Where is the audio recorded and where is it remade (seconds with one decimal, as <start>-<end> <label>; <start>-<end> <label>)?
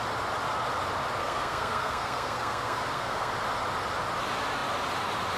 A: 0.0-1.2 recorded; 1.2-3.3 remade; 3.3-5.4 recorded